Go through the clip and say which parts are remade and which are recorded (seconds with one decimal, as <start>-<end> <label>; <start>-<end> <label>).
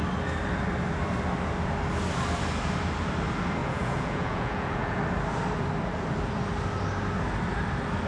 0.0-3.6 recorded; 3.6-5.0 remade; 5.0-8.1 recorded